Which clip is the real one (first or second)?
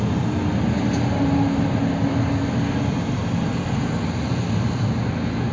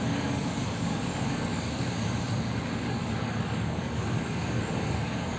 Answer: first